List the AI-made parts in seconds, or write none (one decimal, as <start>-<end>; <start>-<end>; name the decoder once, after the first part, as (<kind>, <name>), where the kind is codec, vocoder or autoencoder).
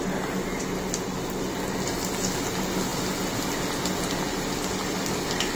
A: none